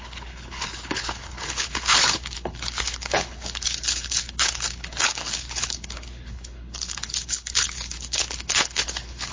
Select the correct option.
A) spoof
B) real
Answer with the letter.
A